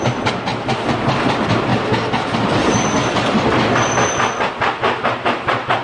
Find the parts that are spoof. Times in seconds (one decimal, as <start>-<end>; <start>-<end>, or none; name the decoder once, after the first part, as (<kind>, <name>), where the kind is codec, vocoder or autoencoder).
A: 0.0-0.5 (vocoder, BigVGAN v2); 1.0-1.7; 4.5-5.8